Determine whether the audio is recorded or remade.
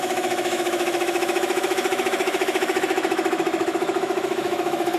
remade